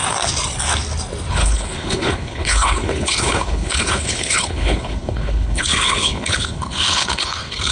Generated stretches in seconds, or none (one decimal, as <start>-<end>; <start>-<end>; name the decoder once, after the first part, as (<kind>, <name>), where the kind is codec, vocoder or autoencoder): 1.3-7.7 (codec, HILCodec)